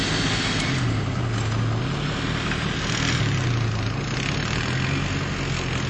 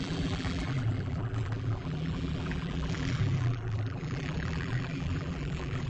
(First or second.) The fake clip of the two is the second